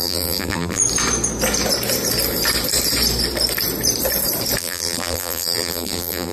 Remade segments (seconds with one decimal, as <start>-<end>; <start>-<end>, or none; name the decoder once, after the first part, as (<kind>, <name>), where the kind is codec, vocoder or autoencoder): 0.0-0.8 (vocoder, BigVGAN v2); 4.6-6.3